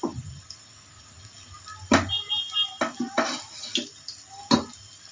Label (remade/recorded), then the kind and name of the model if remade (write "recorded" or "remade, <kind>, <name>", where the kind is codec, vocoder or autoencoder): recorded